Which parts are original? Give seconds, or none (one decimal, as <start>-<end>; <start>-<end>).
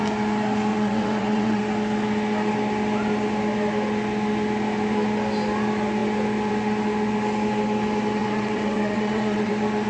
0.0-0.7; 1.6-8.2; 9.5-9.9